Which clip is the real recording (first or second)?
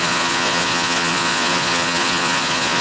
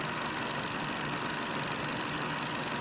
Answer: second